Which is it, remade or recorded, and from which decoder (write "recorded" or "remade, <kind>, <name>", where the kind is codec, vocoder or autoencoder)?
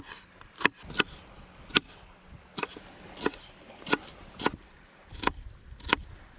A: recorded